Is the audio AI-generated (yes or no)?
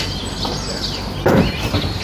no